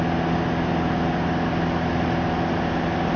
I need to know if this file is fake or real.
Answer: real